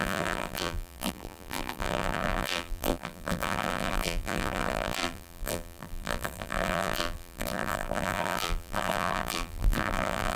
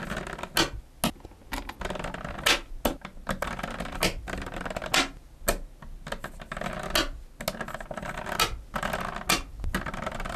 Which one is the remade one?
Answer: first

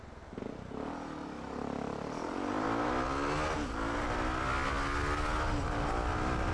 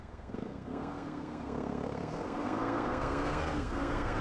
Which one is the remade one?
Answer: second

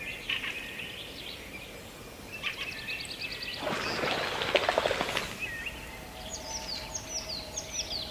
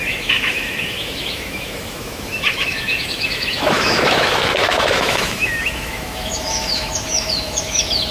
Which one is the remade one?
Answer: second